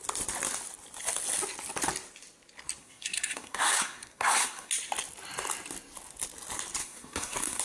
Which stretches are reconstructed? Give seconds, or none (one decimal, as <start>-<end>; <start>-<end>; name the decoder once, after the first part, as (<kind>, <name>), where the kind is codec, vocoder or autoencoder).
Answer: 2.8-4.7 (codec, SNAC); 6.8-7.6